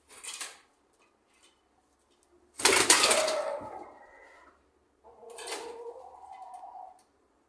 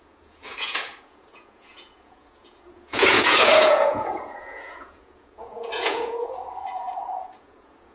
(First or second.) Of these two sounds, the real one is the first